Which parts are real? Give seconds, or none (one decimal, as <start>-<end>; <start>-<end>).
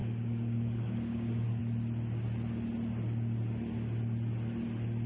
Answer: 1.6-5.1